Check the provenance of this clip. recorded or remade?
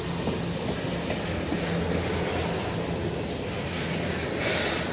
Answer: recorded